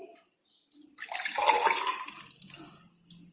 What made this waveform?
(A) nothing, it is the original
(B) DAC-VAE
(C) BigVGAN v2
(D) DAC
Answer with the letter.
A